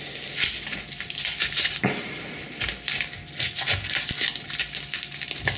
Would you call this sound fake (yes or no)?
no